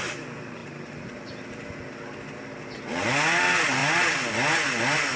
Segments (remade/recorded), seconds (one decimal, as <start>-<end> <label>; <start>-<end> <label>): 0.0-5.2 recorded